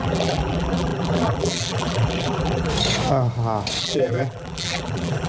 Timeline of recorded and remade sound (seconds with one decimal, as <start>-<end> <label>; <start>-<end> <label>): 0.0-2.7 remade; 2.7-3.8 recorded; 3.8-5.3 remade